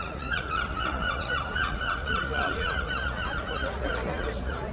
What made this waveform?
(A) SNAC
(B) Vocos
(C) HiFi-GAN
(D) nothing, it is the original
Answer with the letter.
B